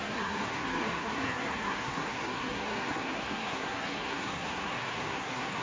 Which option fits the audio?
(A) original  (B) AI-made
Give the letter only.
B